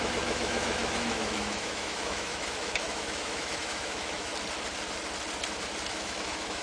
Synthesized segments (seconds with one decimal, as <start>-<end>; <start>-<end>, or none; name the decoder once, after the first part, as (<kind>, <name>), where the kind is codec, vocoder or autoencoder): 0.0-4.3 (autoencoder, DAC-VAE); 5.9-6.6